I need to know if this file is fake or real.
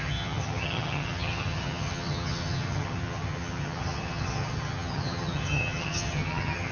fake